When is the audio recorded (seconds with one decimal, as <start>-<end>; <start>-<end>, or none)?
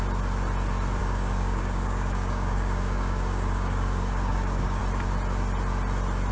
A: 0.0-1.0; 4.8-6.3